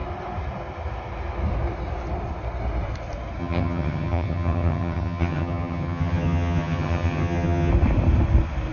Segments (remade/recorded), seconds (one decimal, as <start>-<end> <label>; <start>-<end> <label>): 0.0-3.4 recorded; 3.4-7.7 remade; 7.7-8.7 recorded